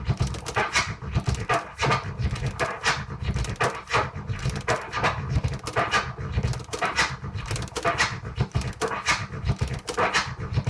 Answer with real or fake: real